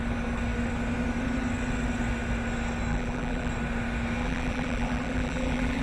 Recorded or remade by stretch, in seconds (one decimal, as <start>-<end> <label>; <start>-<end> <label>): 0.0-2.9 recorded; 2.9-3.5 remade; 3.5-4.2 recorded; 4.2-5.8 remade